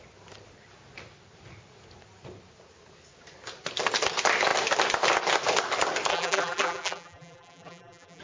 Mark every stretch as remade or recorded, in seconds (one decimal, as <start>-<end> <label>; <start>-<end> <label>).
0.0-6.1 recorded; 6.1-8.2 remade